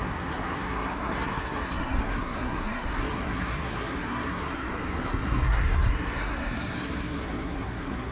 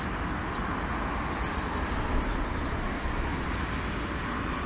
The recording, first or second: second